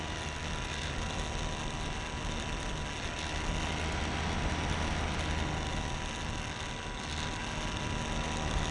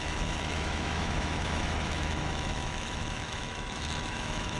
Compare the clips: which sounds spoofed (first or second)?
second